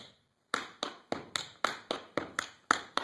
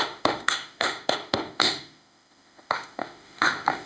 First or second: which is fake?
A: second